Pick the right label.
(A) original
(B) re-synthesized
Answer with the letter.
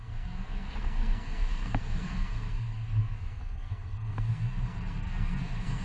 B